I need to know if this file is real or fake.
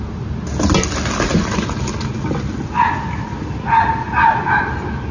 real